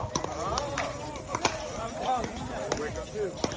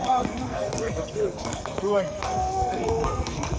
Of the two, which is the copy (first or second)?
second